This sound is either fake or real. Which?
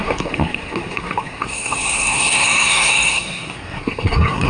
fake